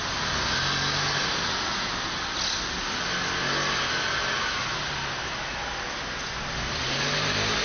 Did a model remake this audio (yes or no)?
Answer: no